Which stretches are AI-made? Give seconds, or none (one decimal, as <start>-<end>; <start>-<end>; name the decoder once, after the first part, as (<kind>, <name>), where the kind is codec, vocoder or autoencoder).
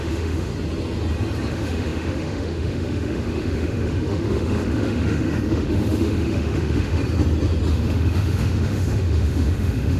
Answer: 0.0-0.5 (autoencoder, DAC-VAE); 1.5-7.0; 7.7-10.0